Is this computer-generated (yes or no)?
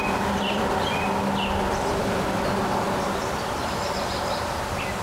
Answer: no